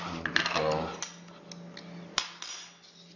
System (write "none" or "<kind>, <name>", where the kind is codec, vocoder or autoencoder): none